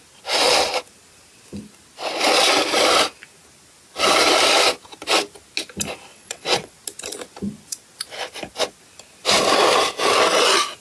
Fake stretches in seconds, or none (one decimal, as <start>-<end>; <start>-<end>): 6.1-6.7